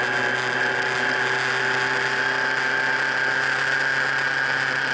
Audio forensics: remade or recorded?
recorded